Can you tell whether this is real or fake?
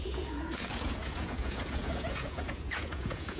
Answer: fake